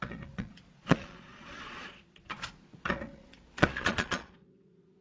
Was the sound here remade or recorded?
remade